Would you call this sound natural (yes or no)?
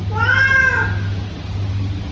yes